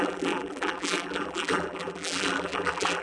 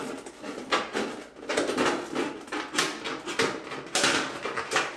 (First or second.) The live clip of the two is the second